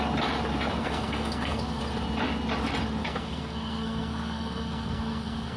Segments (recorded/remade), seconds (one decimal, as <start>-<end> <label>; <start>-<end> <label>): 0.0-0.8 recorded; 0.8-1.8 remade; 1.8-3.0 recorded; 3.0-5.6 remade